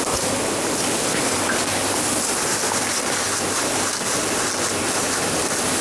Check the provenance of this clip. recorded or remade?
recorded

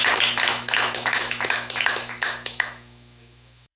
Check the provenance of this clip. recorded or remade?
remade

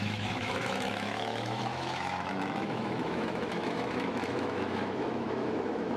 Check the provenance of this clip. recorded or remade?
remade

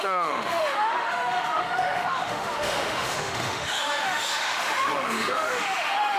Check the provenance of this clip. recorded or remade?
remade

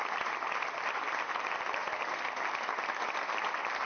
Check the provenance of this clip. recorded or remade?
recorded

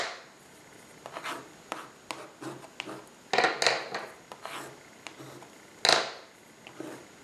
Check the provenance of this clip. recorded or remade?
recorded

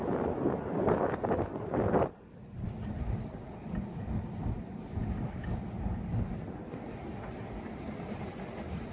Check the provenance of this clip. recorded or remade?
recorded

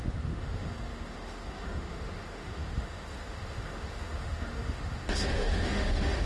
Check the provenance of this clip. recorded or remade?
remade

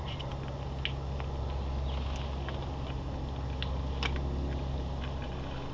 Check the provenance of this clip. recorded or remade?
recorded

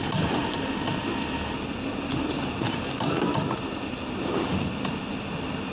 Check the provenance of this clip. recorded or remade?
recorded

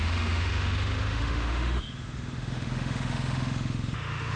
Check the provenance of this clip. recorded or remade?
remade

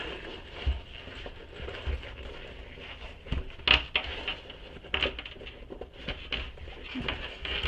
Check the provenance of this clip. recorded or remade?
recorded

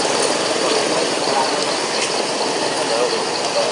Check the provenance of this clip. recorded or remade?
recorded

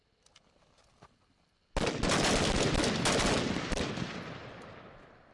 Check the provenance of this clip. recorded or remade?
recorded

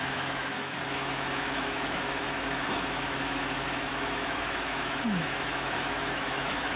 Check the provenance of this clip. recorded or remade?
remade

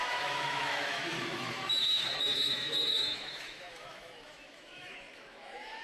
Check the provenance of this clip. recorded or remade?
remade